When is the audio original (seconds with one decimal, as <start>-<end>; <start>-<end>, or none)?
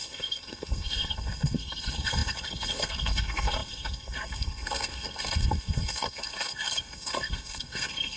none